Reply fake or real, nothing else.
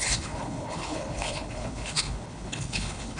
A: fake